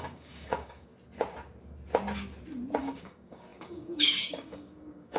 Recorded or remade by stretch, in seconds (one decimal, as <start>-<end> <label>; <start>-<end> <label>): 0.0-0.9 remade; 0.9-2.8 recorded; 2.8-5.2 remade